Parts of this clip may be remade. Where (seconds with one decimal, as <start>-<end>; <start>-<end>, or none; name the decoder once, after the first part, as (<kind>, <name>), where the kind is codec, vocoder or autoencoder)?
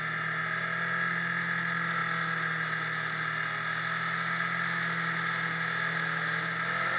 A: none